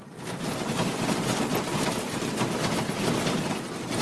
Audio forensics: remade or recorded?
recorded